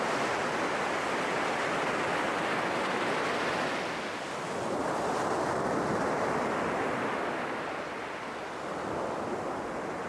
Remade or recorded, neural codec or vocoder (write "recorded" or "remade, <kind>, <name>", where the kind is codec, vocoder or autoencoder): recorded